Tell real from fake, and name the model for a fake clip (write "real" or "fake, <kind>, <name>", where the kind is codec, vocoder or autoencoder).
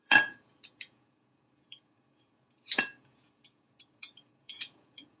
fake, vocoder, Vocos